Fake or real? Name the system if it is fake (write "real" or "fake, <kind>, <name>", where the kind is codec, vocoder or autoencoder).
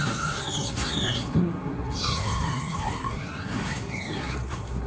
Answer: fake, codec, SNAC